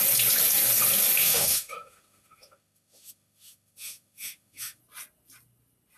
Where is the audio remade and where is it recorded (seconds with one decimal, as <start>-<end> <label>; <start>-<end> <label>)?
0.0-1.2 recorded; 1.2-4.8 remade; 4.8-6.0 recorded